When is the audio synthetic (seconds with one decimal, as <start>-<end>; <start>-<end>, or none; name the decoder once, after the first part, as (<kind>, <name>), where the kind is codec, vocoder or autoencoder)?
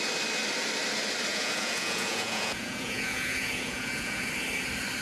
1.3-4.3 (vocoder, Vocos)